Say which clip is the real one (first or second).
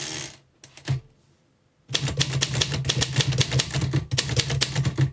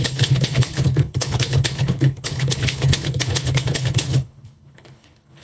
first